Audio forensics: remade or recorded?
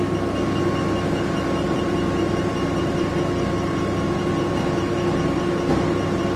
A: recorded